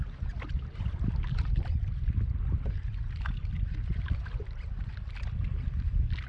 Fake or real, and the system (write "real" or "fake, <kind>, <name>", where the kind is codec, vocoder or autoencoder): real